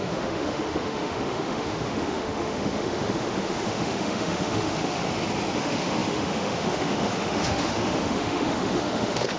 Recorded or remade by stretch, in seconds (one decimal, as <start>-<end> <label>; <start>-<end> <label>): 0.0-5.0 remade; 5.0-5.6 recorded; 5.6-9.4 remade